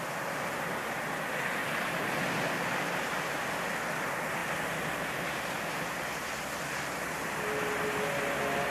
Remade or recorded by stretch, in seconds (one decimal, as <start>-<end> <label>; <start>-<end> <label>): 0.0-8.7 recorded